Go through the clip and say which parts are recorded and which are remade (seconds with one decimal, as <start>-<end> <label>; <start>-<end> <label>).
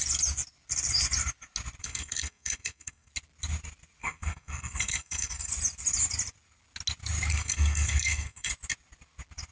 0.0-1.8 recorded; 1.8-3.1 remade; 3.1-4.0 recorded; 4.0-5.5 remade; 5.5-7.3 recorded; 7.3-8.5 remade; 8.5-9.5 recorded